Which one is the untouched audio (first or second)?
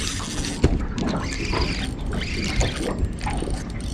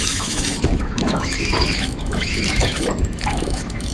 first